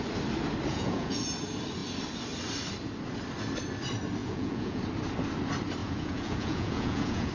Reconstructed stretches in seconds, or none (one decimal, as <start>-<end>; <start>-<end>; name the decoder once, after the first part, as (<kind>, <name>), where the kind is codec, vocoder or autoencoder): 0.7-1.2 (vocoder, Vocos); 4.2-4.8; 5.8-7.3